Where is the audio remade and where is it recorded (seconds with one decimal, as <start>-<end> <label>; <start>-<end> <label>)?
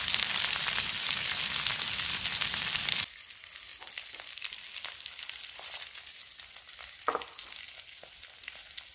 0.0-3.7 recorded; 3.7-4.6 remade; 4.6-8.9 recorded